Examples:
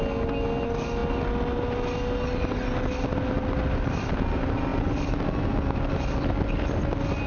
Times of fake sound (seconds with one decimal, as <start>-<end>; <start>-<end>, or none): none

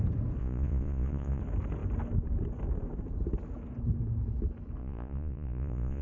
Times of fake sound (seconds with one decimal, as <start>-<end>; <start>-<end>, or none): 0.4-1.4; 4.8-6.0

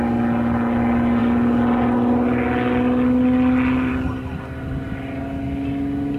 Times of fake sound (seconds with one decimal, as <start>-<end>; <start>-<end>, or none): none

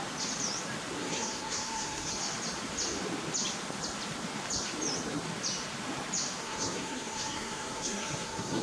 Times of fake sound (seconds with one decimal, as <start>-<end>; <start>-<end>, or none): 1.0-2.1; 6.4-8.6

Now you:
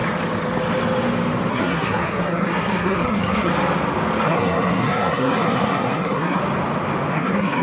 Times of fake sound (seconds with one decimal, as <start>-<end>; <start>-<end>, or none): 1.5-3.5; 4.2-6.4; 7.1-7.6

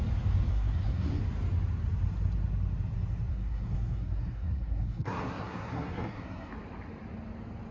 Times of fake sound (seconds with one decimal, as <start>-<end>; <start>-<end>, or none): 0.5-1.2; 3.3-6.5

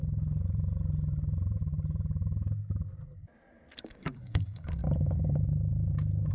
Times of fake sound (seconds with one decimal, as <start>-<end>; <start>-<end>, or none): 3.8-4.8

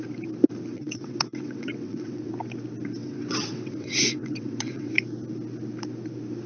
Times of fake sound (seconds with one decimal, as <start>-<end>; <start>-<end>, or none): 0.7-2.3; 3.0-4.9